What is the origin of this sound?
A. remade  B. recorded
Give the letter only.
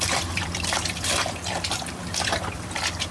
A